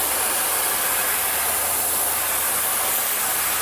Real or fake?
real